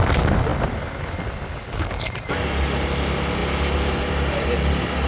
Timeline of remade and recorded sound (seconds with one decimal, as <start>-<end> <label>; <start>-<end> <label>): 0.0-5.1 recorded